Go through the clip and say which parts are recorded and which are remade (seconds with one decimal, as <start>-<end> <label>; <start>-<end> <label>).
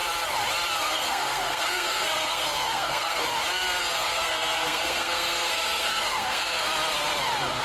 0.0-0.8 recorded; 0.8-3.2 remade; 3.2-3.8 recorded; 3.8-6.7 remade; 6.7-7.6 recorded